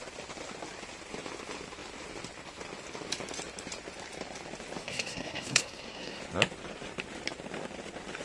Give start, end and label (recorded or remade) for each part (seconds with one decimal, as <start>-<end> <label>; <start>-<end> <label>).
0.0-4.8 recorded; 4.8-6.2 remade; 6.2-8.2 recorded